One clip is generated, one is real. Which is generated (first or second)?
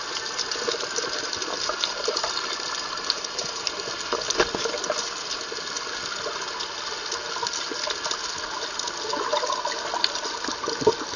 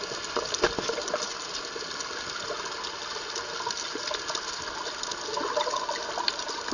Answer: second